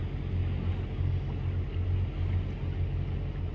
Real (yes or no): yes